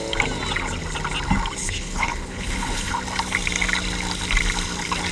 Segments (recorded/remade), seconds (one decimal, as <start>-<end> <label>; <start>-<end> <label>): 0.0-1.6 recorded; 1.6-2.9 remade; 2.9-5.1 recorded